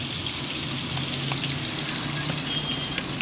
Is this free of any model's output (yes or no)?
yes